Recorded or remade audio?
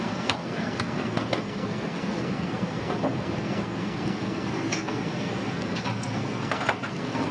remade